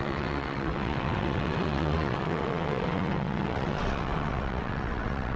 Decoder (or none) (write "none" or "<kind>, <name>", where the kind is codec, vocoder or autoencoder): vocoder, WaveNeXt